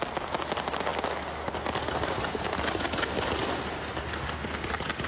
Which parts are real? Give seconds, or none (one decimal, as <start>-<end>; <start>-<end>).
0.0-5.1